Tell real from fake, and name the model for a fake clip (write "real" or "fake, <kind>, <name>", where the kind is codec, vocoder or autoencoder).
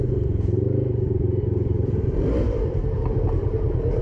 fake, vocoder, BigVGAN v2